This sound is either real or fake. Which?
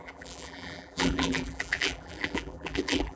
fake